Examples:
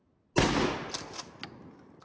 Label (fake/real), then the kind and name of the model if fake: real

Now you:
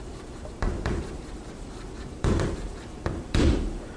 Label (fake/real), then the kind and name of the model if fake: fake, vocoder, BigVGAN v2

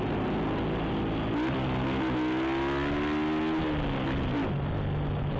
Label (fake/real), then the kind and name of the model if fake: real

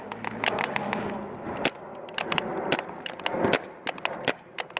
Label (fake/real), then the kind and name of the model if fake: real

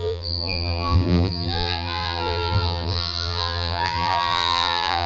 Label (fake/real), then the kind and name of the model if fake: fake, vocoder, BigVGAN v2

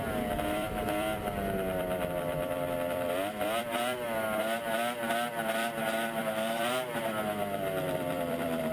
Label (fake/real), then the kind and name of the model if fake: fake, vocoder, BigVGAN v2